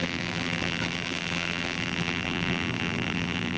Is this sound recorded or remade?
remade